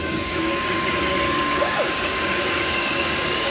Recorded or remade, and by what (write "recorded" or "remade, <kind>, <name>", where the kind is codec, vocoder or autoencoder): remade, codec, DAC